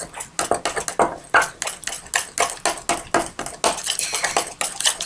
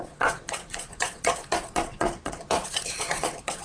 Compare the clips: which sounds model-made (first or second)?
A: second